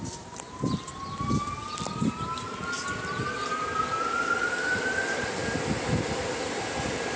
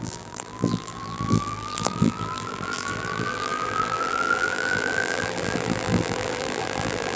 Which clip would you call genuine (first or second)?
first